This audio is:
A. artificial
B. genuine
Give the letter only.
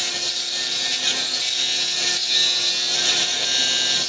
B